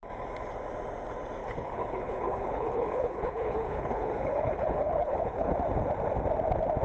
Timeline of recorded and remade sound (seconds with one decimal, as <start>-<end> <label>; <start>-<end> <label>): 0.0-1.4 recorded; 1.4-5.5 remade; 5.5-6.8 recorded